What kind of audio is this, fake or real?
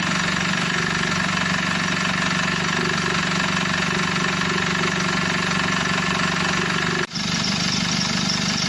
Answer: real